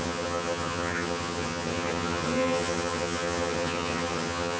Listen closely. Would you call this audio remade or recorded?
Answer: remade